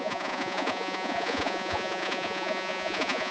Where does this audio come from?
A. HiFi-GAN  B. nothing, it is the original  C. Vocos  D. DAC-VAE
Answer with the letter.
C